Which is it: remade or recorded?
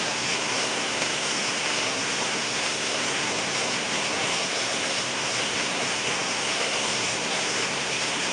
remade